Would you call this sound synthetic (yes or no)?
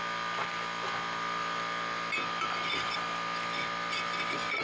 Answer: no